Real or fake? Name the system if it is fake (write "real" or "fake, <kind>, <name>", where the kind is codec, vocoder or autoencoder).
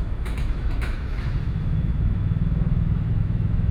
fake, autoencoder, DAC-VAE